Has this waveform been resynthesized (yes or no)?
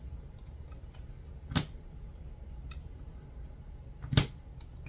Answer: no